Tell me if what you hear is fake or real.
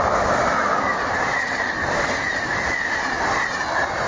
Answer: real